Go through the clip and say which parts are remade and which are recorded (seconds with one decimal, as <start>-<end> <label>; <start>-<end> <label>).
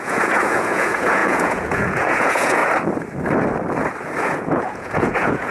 0.0-2.6 remade; 2.6-4.2 recorded; 4.2-5.5 remade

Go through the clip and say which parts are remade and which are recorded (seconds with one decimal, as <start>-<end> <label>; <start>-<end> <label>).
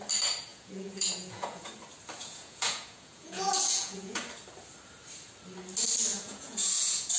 0.0-0.5 recorded; 0.5-1.7 remade; 1.7-2.2 recorded; 2.2-4.2 remade; 4.2-6.1 recorded; 6.1-7.2 remade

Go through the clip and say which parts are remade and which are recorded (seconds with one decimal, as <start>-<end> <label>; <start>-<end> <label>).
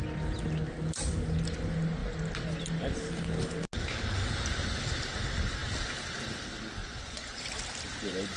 0.0-6.8 recorded; 6.8-7.4 remade; 7.4-8.4 recorded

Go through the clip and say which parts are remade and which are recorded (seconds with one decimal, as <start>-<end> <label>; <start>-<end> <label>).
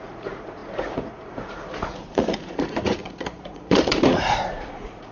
0.0-5.1 remade